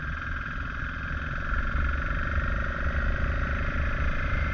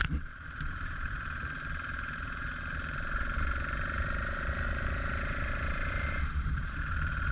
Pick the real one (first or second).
first